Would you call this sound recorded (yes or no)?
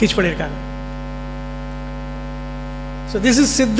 yes